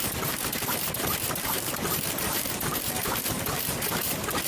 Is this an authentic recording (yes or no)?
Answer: no